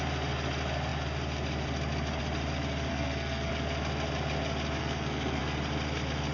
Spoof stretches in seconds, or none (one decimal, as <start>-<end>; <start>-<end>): 2.9-3.5; 4.8-5.4